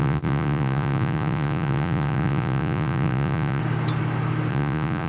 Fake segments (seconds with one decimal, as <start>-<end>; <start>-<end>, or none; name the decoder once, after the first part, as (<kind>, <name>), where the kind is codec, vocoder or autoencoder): 0.0-3.6 (vocoder, Vocos); 4.5-5.1